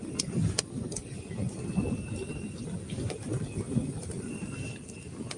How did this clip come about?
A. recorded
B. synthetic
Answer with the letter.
A